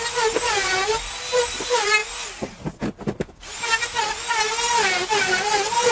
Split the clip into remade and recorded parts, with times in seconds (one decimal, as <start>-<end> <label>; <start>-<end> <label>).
0.0-5.9 recorded